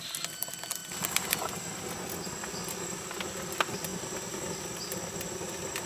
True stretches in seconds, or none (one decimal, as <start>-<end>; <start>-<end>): 0.0-0.8; 1.8-5.9

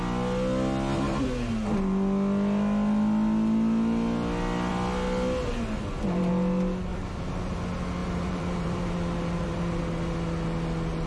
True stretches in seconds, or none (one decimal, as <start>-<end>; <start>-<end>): 0.0-6.9; 7.6-8.0; 9.8-11.1

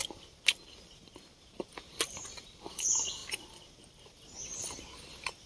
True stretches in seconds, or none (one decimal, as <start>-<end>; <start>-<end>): 0.0-5.5

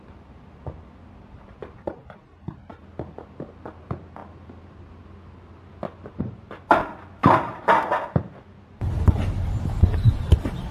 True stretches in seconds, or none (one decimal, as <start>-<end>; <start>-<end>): 1.6-3.6; 4.2-6.2; 7.2-9.8

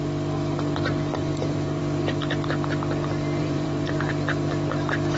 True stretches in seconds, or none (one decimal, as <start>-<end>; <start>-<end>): 0.0-1.2; 1.8-3.4; 4.1-5.2

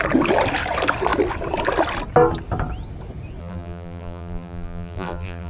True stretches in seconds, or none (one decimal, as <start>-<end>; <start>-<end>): 0.0-3.4